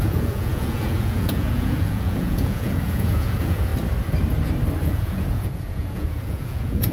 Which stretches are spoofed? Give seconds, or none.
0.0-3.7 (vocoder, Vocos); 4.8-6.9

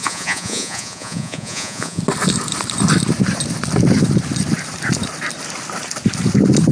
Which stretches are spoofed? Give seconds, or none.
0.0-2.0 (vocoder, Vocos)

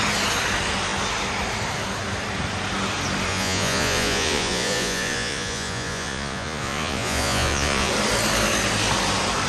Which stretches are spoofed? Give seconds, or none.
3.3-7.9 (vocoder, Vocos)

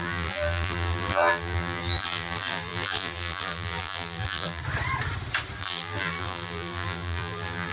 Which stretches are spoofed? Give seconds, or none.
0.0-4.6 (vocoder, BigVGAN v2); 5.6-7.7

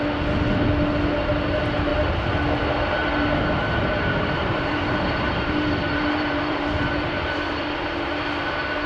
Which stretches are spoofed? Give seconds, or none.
3.0-8.2 (vocoder, BigVGAN v2)